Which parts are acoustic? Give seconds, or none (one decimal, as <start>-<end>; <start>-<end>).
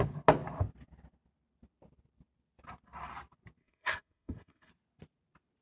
0.0-3.6; 4.7-5.6